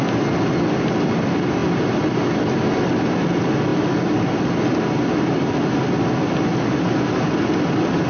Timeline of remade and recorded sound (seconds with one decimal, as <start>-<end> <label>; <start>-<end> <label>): 0.0-8.1 recorded